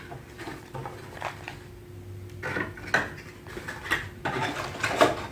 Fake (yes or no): no